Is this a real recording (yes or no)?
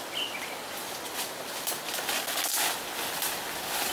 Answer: yes